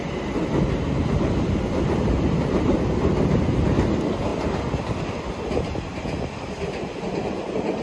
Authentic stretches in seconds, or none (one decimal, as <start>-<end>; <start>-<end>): 0.0-7.8